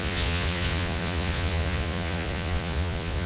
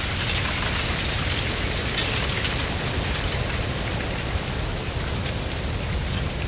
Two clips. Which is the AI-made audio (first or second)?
first